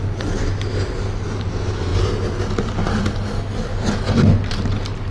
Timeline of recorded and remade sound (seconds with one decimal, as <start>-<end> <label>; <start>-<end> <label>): 0.0-5.1 recorded